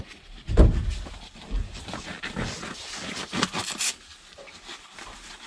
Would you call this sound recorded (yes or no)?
no